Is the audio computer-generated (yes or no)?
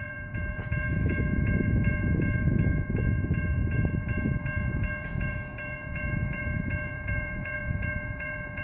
yes